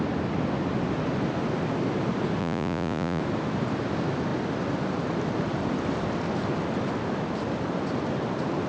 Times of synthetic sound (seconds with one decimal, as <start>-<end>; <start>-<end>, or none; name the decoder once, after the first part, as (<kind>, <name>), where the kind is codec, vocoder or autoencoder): 2.4-3.2 (vocoder, Vocos)